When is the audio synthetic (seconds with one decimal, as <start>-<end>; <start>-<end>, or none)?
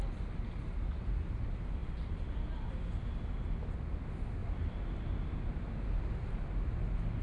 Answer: 1.8-2.7; 4.4-5.5